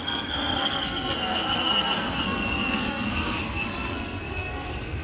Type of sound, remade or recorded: remade